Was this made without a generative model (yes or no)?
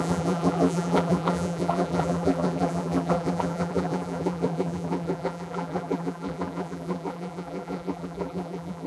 no